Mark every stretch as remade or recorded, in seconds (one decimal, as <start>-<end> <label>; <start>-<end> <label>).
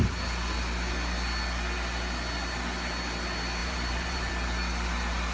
0.0-3.6 recorded; 3.6-4.3 remade; 4.3-5.3 recorded